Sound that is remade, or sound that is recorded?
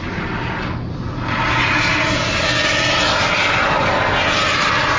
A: recorded